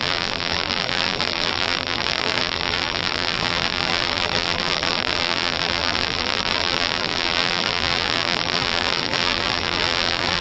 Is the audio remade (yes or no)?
yes